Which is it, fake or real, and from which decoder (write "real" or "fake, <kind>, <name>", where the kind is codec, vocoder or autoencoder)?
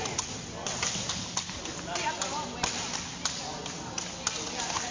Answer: real